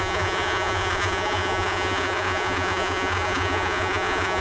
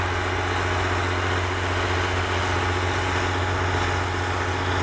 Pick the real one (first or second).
second